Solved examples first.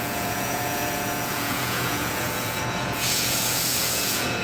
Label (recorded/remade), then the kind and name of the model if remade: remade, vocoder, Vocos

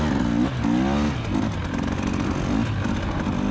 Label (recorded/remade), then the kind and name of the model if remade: recorded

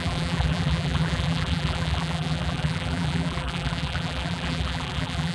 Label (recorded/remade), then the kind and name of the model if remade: remade, vocoder, BigVGAN v2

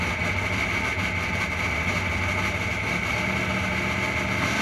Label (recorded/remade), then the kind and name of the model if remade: recorded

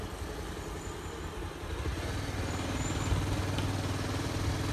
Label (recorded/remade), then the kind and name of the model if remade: recorded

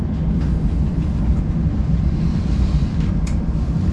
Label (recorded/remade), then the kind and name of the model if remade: recorded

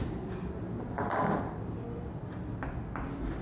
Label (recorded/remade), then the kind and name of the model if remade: recorded